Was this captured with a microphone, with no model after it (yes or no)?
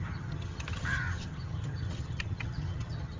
no